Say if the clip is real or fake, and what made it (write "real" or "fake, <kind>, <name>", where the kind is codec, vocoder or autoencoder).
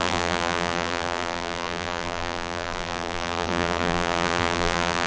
fake, vocoder, BigVGAN v2